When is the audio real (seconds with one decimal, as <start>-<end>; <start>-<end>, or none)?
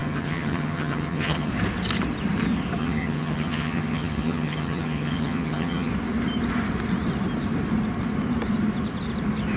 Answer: 1.5-2.8; 5.9-9.6